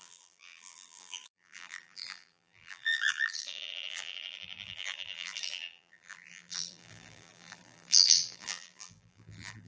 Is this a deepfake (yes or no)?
yes